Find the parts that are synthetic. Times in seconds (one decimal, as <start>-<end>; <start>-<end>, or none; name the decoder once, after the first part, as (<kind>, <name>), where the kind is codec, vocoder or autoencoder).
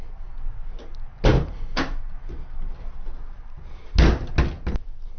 none